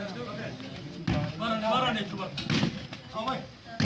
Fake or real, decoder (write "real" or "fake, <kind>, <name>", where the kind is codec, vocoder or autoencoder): real